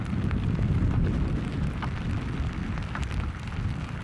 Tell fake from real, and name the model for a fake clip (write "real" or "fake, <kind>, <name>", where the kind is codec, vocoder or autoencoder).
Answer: real